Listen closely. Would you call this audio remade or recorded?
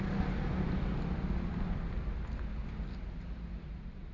recorded